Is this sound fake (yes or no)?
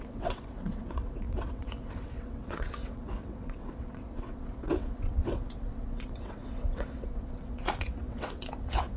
yes